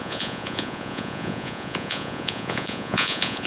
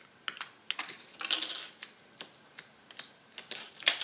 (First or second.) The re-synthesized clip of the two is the first